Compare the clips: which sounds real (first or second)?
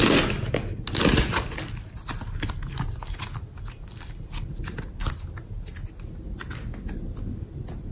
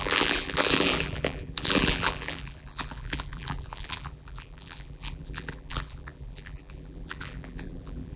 first